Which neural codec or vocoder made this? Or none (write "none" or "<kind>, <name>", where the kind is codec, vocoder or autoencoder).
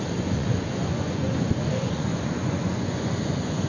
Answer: vocoder, Vocos